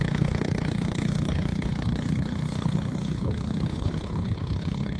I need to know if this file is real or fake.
fake